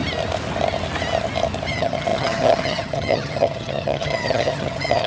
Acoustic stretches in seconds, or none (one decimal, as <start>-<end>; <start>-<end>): 0.0-1.7